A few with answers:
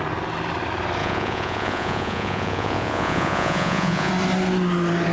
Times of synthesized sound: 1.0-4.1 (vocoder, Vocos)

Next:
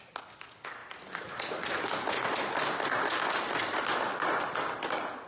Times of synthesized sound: none

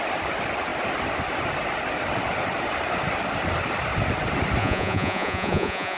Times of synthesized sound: 4.6-6.0 (vocoder, Vocos)

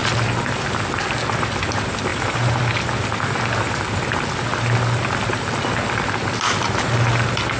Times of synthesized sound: 2.1-2.6 (vocoder, BigVGAN v2)

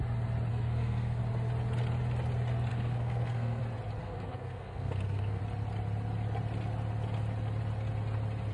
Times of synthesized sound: 0.5-1.2 (codec, SNAC); 2.7-3.6; 4.0-5.4

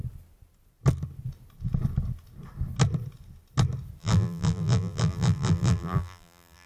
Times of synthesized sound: 4.0-6.7 (vocoder, BigVGAN v2)

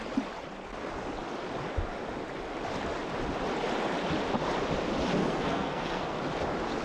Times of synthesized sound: 5.2-6.2 (codec, SNAC)

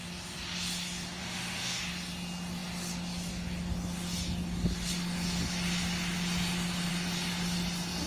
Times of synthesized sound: 1.2-1.8 (autoencoder, DAC-VAE)